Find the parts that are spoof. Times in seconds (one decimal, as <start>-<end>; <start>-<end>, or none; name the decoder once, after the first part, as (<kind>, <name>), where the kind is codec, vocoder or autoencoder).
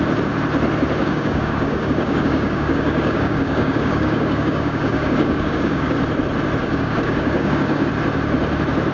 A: 1.0-6.0 (codec, DAC); 6.6-7.9